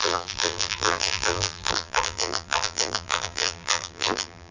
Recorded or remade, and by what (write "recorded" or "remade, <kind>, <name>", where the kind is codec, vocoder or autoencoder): remade, vocoder, BigVGAN v2